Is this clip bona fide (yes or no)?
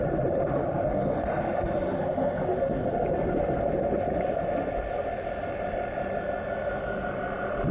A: yes